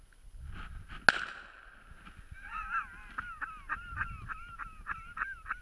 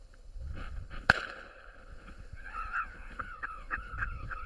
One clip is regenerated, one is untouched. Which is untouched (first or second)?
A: first